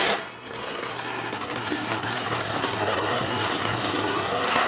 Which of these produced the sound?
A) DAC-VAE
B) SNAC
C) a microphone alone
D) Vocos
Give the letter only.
B